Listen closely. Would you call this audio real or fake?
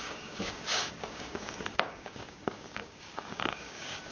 fake